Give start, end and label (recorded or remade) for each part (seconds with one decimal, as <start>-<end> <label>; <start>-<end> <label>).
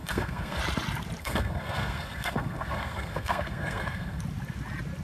0.0-0.6 remade; 0.6-1.2 recorded; 1.2-4.2 remade; 4.2-5.0 recorded